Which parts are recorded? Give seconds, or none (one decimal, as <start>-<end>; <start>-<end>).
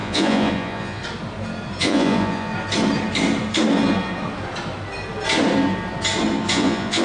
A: 1.0-1.8; 2.5-6.5